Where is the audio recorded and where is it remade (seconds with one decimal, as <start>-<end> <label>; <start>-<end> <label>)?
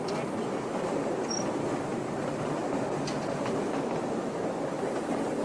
0.0-5.4 recorded